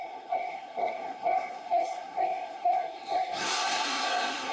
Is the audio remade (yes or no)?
yes